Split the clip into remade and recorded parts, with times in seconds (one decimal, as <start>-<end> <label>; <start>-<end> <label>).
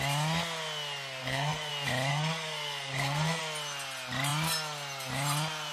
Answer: 0.0-1.2 recorded; 1.2-1.7 remade; 1.7-2.1 recorded; 2.1-3.4 remade; 3.4-5.7 recorded